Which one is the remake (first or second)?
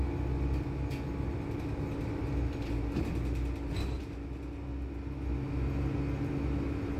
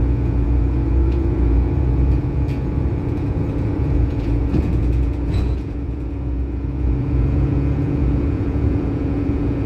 second